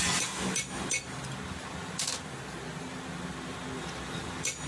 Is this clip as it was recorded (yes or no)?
yes